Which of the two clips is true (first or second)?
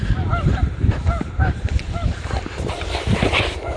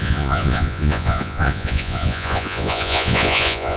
first